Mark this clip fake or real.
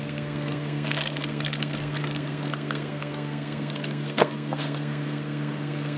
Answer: fake